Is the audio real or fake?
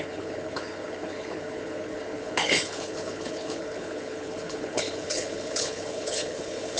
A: fake